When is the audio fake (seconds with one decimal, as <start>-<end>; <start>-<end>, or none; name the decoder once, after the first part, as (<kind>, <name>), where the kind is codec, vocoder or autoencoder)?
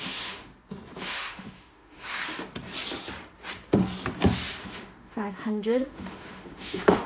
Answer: 0.0-0.5 (autoencoder, DAC-VAE); 1.0-2.2; 4.6-7.1